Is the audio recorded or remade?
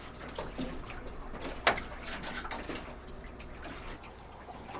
recorded